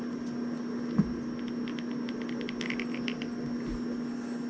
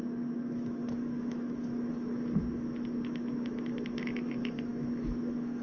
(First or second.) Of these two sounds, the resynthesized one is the second